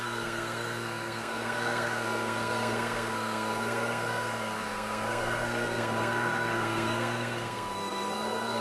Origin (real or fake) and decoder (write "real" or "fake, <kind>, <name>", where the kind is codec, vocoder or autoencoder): fake, codec, SNAC